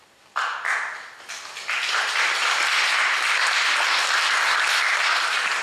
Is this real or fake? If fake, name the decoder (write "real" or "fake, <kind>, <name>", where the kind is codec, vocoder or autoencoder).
real